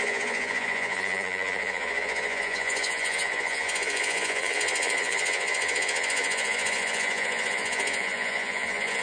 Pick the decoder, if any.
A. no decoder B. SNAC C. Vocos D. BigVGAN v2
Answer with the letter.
C